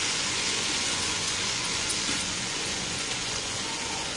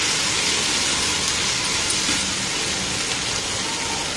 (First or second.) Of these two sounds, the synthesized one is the first